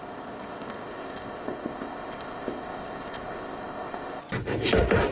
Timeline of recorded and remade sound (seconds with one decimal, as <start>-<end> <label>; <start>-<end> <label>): 0.0-4.2 remade; 4.2-5.1 recorded